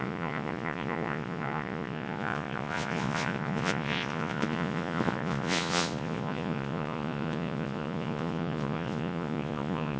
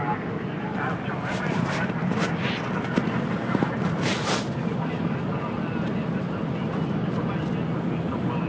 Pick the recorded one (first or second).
second